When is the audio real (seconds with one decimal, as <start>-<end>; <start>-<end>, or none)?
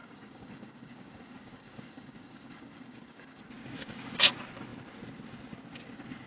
3.4-6.3